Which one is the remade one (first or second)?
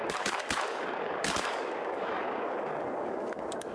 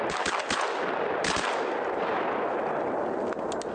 first